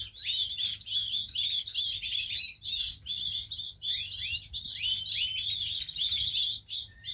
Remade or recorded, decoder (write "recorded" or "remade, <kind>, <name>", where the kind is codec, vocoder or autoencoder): recorded